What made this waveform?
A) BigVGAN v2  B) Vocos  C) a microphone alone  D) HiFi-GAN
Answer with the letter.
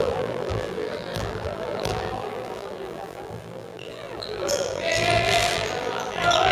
A